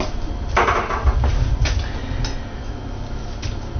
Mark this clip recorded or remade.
recorded